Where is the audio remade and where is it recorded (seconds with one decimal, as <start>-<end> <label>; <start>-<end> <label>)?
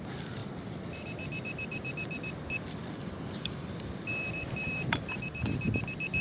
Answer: 0.0-6.2 remade